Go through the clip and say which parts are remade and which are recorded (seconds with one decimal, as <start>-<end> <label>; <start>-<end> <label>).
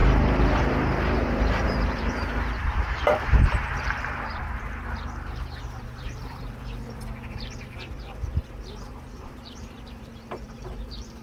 0.0-11.2 remade